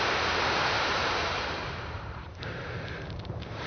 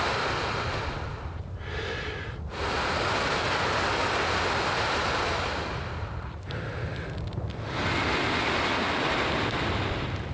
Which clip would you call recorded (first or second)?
second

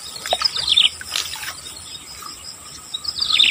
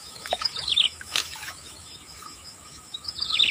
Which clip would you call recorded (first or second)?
first